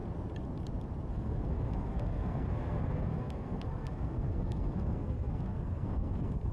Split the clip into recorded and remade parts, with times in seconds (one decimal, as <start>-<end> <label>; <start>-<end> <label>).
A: 0.0-1.1 recorded; 1.1-6.5 remade